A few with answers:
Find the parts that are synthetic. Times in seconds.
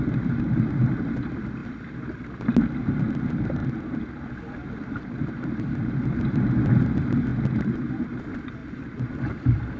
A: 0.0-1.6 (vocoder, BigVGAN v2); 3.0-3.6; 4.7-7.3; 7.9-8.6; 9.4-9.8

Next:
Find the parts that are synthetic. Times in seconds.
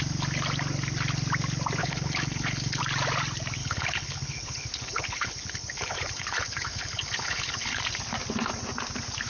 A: 1.8-2.8 (codec, HILCodec); 3.6-7.8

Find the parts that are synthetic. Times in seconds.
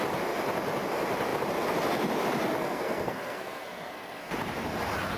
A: 2.6-4.3 (codec, SNAC)